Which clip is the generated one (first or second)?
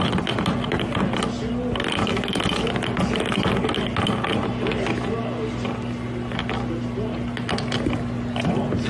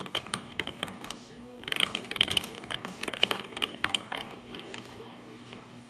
second